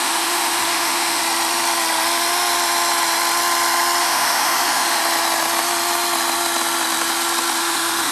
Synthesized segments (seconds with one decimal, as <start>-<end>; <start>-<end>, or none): 0.0-1.2; 4.0-5.0; 7.6-8.1